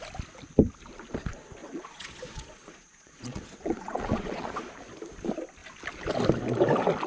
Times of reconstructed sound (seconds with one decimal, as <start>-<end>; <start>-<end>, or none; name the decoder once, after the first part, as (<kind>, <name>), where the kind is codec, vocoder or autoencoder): 1.6-4.7 (vocoder, Vocos)